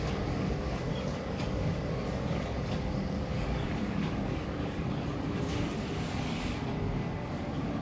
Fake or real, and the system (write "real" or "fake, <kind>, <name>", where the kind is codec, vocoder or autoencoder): fake, codec, DAC